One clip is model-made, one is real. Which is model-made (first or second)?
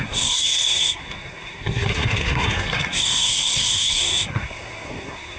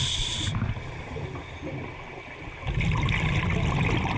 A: first